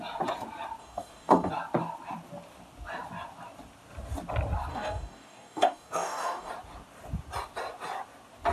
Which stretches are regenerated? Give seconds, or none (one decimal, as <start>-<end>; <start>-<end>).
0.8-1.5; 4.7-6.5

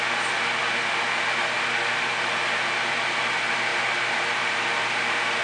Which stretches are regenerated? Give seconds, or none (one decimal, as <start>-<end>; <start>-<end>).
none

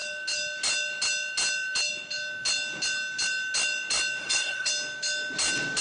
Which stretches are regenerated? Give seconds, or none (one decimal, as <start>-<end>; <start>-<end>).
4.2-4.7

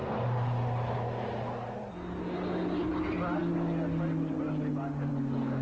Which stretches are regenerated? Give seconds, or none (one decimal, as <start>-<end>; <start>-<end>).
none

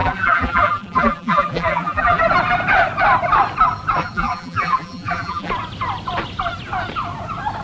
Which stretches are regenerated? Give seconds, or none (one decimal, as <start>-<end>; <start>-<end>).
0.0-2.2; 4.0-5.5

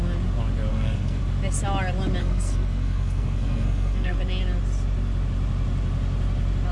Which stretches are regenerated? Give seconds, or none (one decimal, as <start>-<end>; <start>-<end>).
0.7-1.2; 2.2-4.2

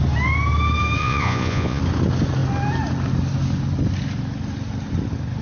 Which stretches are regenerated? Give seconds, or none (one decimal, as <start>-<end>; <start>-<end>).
1.0-1.8